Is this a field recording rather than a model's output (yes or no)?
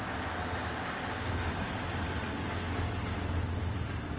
yes